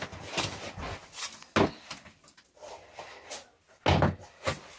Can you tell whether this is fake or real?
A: real